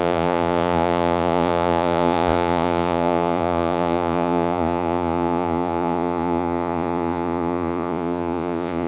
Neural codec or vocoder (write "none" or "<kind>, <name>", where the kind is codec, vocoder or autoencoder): vocoder, Vocos